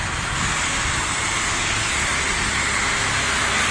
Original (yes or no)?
yes